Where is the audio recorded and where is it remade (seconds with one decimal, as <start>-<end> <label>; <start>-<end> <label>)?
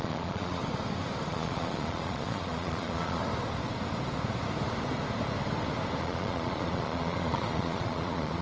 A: 0.0-0.6 remade; 0.6-1.3 recorded; 1.3-3.2 remade; 3.2-6.0 recorded; 6.0-8.4 remade